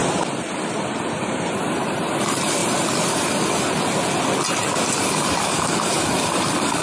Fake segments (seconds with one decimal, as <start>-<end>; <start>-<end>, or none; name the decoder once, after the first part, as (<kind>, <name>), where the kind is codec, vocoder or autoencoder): 4.6-5.4 (vocoder, BigVGAN v2)